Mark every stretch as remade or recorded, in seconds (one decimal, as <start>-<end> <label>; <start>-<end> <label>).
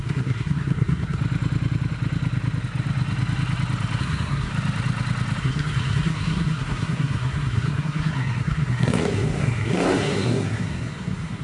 0.0-1.2 remade; 1.2-4.0 recorded; 4.0-4.5 remade; 4.5-5.4 recorded; 5.4-11.4 remade